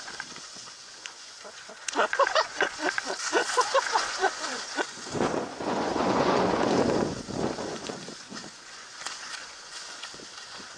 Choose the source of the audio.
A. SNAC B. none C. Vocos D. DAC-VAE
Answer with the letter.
C